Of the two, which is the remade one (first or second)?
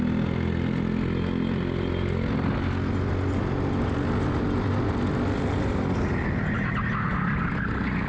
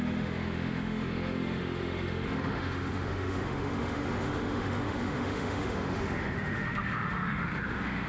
second